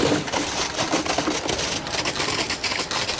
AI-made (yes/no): no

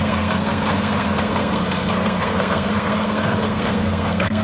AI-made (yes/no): yes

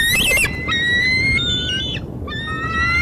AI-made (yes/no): no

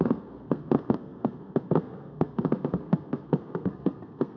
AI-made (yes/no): yes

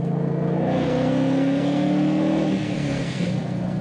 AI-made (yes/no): yes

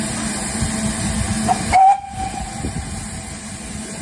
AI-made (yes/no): no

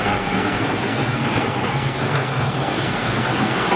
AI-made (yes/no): yes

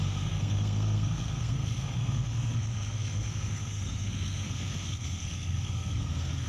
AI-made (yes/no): yes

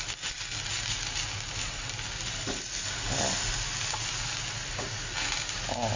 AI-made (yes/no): no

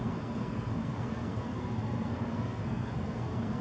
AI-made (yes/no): yes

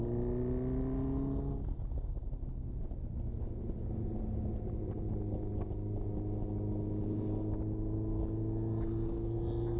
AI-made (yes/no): no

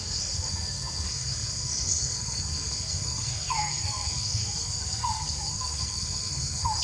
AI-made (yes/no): yes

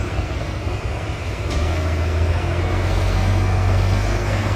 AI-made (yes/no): yes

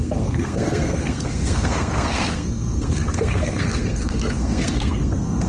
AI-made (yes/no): yes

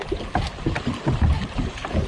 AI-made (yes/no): no